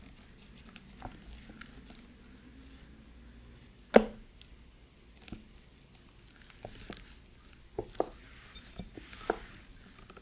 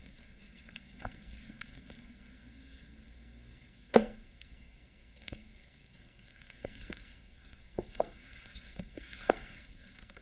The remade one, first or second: second